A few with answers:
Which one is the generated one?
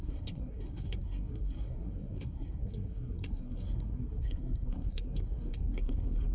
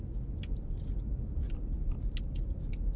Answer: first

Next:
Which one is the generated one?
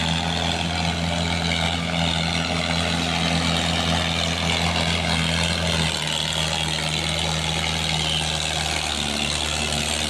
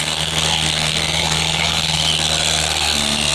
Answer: second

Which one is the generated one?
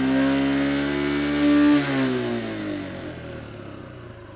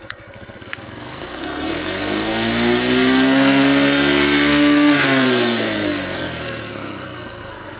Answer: second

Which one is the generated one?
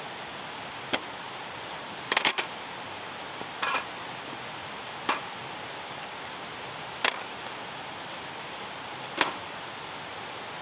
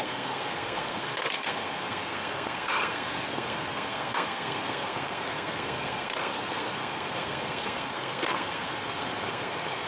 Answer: second